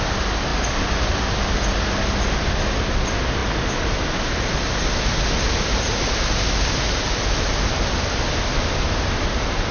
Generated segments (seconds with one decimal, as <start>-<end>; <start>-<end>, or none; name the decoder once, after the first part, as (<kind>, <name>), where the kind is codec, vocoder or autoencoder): none